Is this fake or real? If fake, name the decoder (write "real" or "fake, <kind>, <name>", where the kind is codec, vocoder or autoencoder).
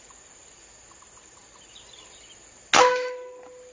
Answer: real